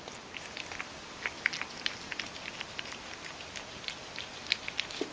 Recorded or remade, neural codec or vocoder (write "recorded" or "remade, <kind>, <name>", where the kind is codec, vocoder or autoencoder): recorded